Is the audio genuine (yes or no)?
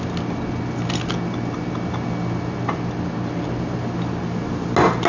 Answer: yes